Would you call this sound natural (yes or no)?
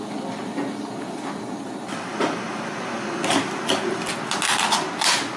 yes